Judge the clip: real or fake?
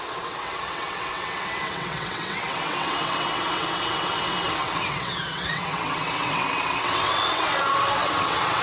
fake